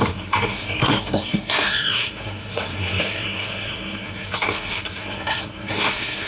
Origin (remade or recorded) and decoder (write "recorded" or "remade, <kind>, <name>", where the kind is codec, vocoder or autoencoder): remade, codec, SNAC